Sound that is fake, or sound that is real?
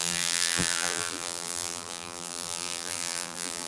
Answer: fake